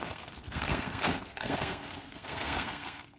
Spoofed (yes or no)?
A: yes